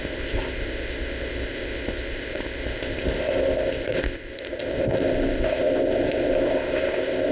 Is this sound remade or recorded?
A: remade